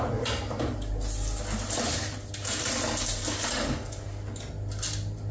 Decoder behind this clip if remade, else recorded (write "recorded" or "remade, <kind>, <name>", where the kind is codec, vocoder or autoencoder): recorded